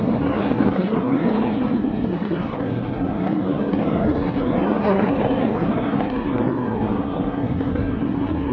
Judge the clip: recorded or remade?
remade